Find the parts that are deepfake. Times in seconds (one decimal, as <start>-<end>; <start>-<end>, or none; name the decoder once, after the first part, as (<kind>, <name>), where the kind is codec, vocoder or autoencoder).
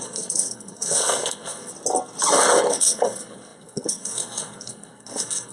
0.0-1.7 (codec, SNAC); 2.7-5.5